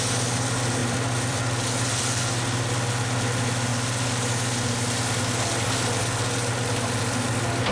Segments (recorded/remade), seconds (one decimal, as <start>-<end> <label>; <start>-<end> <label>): 0.0-0.8 recorded; 0.8-2.2 remade; 2.2-7.7 recorded